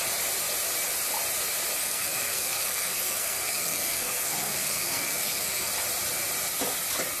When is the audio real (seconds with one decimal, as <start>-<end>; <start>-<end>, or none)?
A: 0.0-1.8; 5.7-7.2